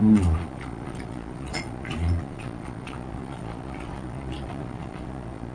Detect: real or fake fake